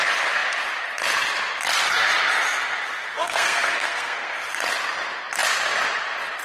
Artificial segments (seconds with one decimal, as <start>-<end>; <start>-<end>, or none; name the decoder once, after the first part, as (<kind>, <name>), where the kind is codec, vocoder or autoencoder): 3.1-4.3 (codec, SNAC)